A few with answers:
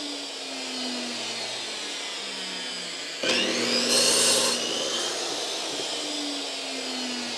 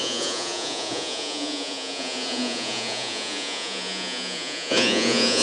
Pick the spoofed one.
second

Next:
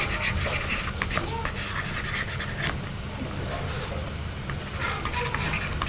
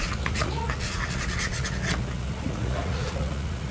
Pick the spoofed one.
second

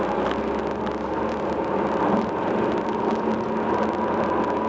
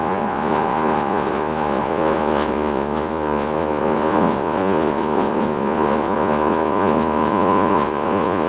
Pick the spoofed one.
second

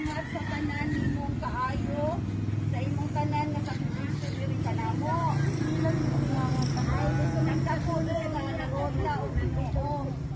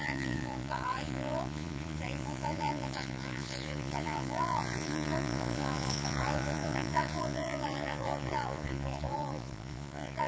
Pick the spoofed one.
second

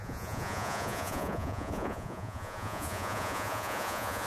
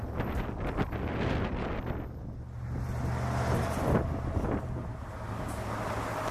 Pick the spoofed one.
first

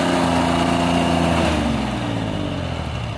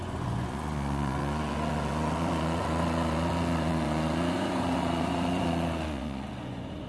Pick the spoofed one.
second